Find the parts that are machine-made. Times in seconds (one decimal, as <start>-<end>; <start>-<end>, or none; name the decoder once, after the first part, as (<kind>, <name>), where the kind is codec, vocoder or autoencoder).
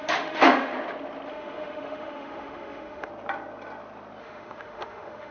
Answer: 0.0-0.7 (autoencoder, DAC-VAE); 1.3-3.1; 4.2-5.3